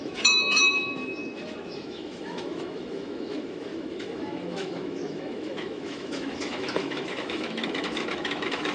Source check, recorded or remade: remade